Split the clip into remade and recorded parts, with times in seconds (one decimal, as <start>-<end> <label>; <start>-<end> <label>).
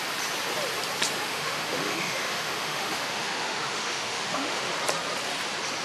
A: 0.0-1.2 recorded; 1.2-4.7 remade; 4.7-5.8 recorded